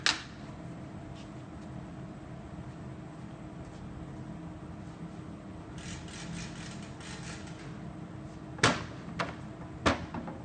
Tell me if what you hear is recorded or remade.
recorded